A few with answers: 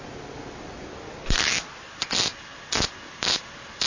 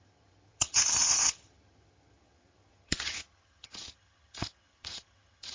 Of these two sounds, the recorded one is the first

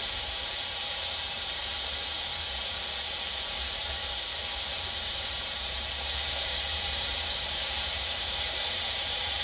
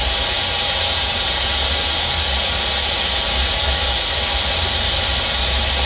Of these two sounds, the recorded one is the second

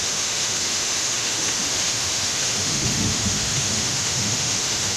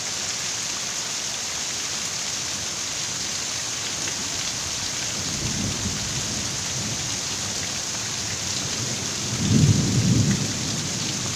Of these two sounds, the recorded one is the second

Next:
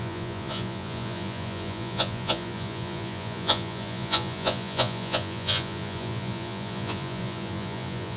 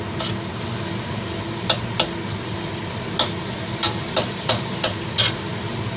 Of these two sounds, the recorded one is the second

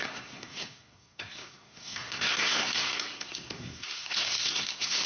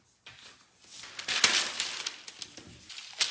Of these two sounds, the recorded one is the second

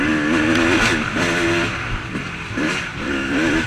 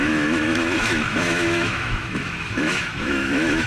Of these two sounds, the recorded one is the first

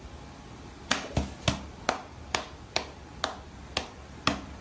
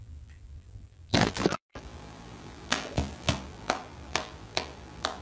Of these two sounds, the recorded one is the first